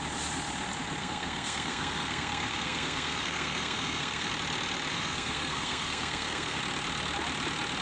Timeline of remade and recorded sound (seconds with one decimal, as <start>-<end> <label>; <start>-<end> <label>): 0.0-1.0 recorded; 1.0-4.3 remade; 4.3-4.9 recorded; 4.9-6.6 remade; 6.6-7.8 recorded